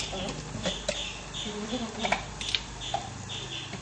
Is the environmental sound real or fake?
real